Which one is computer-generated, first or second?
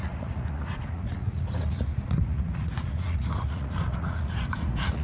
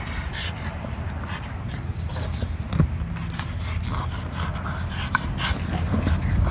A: first